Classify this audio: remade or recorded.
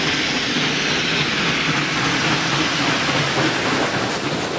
recorded